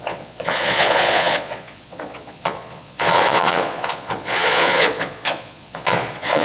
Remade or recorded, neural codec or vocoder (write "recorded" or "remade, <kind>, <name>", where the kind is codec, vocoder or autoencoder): remade, vocoder, Vocos